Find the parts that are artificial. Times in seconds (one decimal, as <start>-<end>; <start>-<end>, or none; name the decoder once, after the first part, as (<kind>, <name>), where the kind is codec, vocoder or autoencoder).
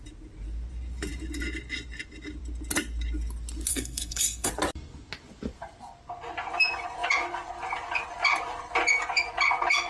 3.7-4.5 (codec, SNAC)